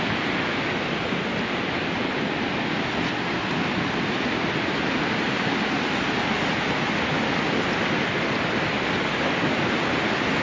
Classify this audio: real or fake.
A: real